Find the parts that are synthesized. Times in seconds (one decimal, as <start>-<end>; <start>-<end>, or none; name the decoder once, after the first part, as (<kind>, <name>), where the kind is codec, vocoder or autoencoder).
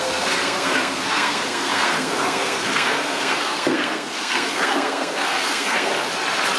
0.0-5.9 (codec, SNAC)